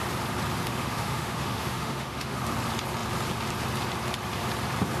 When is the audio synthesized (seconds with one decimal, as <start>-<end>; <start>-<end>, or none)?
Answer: 0.7-2.4